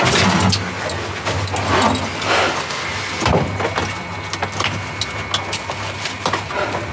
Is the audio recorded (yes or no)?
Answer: yes